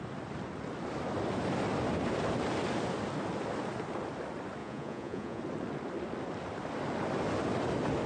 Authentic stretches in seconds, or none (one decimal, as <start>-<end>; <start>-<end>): 0.0-4.6; 5.4-8.1